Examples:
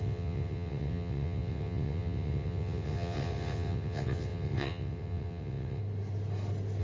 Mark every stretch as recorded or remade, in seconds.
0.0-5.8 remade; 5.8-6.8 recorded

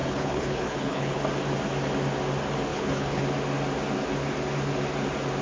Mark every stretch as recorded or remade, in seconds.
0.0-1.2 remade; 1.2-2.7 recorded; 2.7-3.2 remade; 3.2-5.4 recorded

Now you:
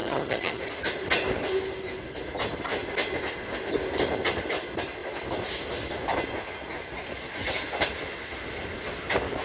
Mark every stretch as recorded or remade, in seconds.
0.0-0.6 remade; 0.6-9.4 recorded

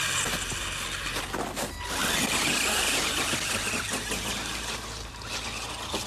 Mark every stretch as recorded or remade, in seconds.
0.0-6.1 recorded

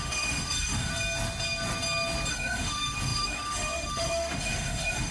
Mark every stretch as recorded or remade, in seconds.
0.0-0.9 remade; 0.9-2.3 recorded; 2.3-5.1 remade